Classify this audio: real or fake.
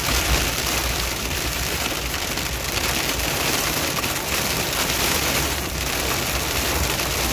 fake